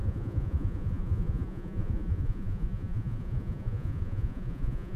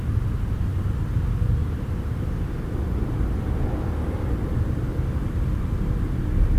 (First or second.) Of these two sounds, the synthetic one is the first